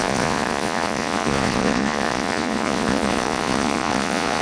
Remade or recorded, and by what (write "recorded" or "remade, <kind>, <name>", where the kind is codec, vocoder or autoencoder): remade, vocoder, Vocos